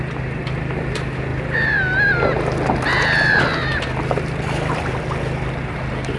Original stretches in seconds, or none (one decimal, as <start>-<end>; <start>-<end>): 1.3-3.3; 3.7-5.6